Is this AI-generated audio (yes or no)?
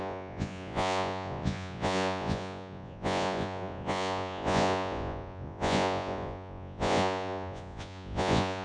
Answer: yes